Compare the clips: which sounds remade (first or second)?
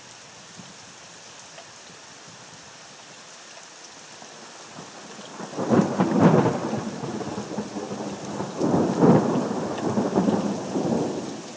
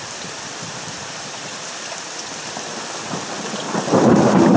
second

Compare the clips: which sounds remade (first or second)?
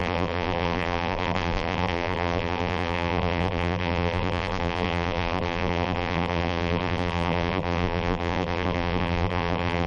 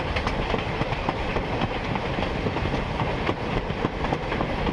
first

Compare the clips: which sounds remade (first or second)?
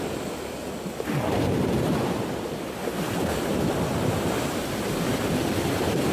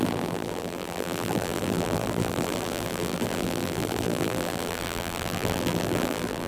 second